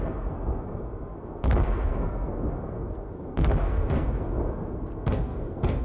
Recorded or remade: remade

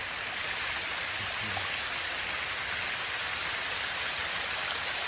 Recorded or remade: recorded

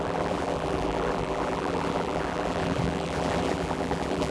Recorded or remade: remade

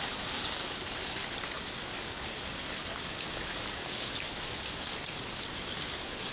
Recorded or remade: remade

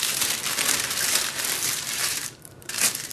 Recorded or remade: remade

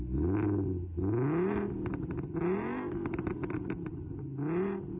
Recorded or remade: recorded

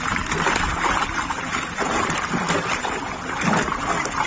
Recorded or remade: recorded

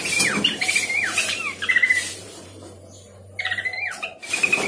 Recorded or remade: remade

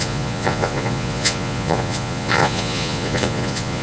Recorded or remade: remade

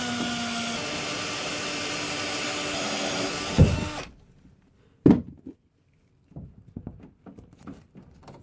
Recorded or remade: recorded